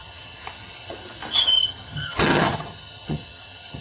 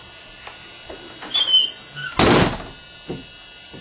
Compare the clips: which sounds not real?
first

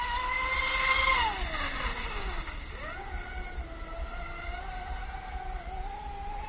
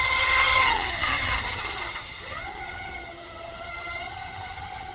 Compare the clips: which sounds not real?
second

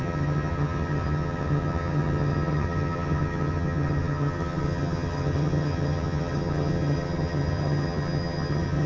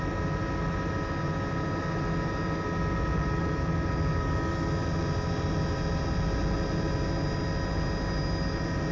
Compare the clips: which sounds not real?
first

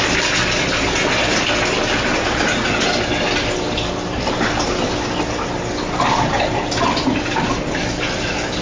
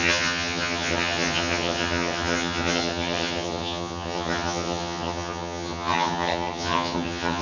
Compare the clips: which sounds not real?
second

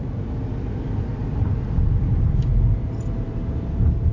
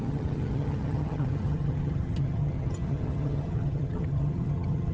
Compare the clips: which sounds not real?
second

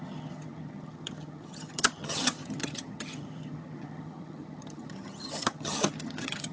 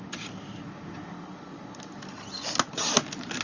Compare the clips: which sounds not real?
first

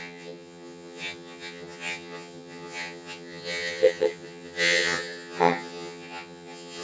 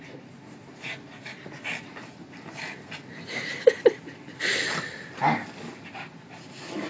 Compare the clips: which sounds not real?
first